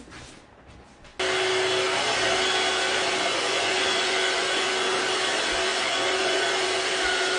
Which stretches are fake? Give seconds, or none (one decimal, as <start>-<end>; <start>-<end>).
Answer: 3.3-5.0; 5.7-6.8